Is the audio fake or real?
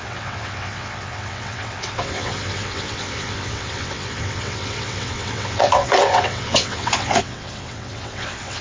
fake